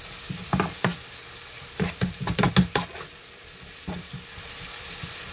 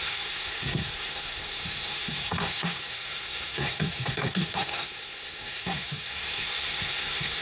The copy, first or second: second